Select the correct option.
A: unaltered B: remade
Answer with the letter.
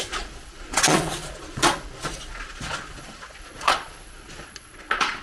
B